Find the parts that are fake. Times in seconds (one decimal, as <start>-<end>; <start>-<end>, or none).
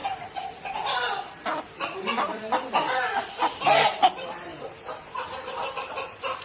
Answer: 0.7-4.5; 5.9-6.4